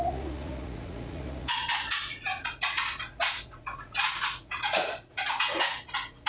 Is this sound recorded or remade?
remade